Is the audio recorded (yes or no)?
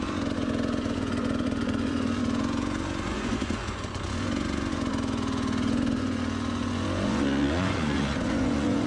no